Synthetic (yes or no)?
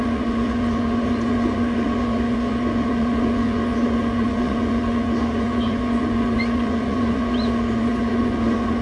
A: yes